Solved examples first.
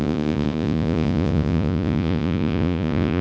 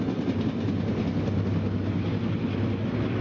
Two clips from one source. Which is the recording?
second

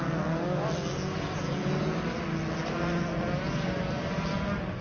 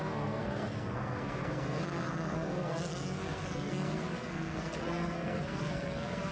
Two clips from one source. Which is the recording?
first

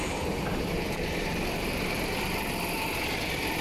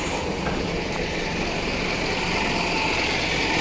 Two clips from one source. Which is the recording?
second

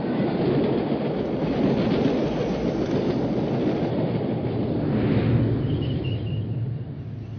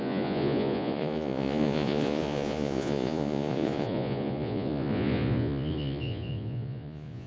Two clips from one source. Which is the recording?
first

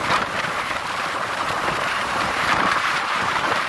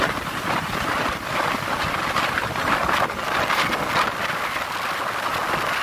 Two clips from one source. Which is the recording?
second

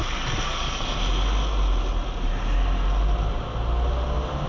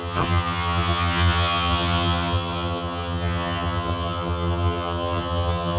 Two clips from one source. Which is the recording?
first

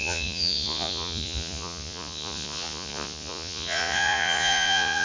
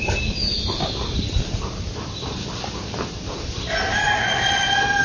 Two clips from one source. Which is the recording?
second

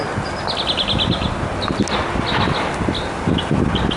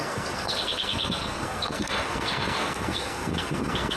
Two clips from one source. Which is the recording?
first